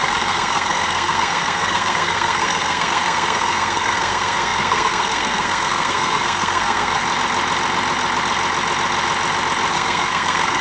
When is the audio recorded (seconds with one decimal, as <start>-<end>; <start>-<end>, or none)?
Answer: 7.0-9.7